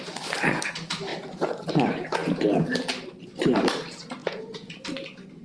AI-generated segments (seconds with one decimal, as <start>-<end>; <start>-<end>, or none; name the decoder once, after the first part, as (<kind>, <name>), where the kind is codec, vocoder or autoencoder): 4.2-4.7 (vocoder, Vocos)